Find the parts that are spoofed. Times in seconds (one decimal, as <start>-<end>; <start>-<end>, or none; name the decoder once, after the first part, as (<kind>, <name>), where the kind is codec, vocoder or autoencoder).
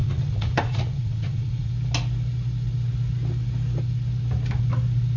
0.0-1.7 (vocoder, Vocos)